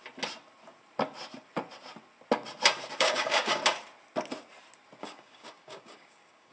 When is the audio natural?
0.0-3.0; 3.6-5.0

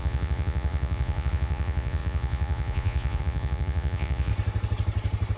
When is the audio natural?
4.3-5.4

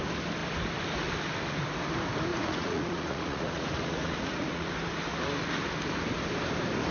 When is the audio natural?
0.0-2.3; 4.7-6.9

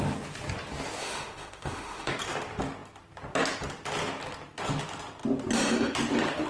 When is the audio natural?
0.0-1.0; 2.1-6.5

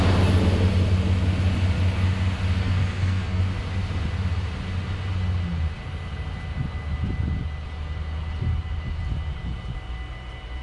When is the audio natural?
0.0-2.6; 3.4-10.6

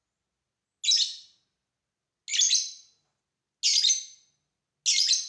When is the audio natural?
0.0-5.3